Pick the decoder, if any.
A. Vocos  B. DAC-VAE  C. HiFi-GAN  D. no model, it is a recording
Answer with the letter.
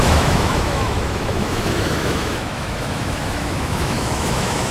B